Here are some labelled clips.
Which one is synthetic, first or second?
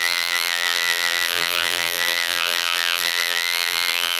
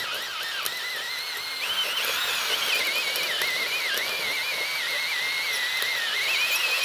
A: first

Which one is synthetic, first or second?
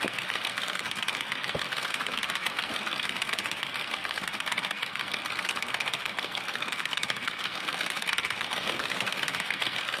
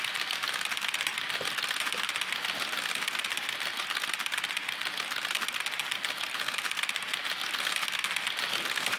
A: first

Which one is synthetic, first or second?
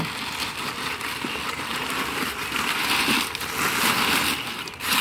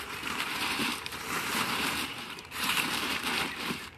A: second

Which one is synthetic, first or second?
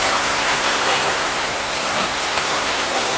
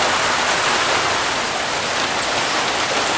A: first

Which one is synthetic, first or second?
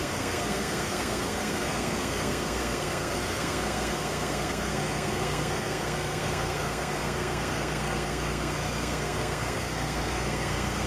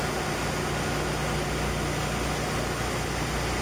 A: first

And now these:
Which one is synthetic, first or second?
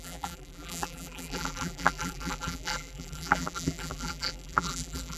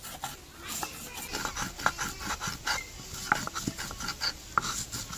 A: first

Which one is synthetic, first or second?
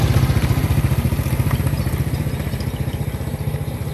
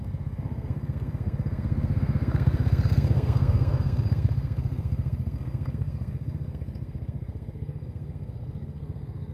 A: second